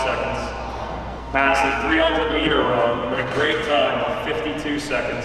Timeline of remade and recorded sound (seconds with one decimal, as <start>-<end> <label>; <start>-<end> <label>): 0.0-0.8 recorded; 0.8-3.9 remade; 3.9-5.2 recorded